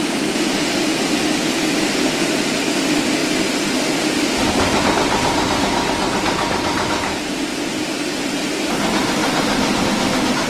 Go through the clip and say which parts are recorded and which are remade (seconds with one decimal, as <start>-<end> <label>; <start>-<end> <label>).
0.0-9.2 recorded; 9.2-9.8 remade; 9.8-10.5 recorded